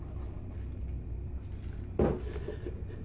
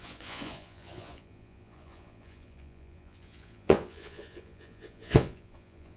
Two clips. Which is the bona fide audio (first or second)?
first